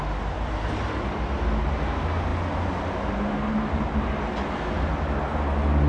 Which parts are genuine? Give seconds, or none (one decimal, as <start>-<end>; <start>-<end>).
0.0-5.9